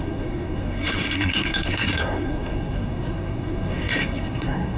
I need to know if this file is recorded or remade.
remade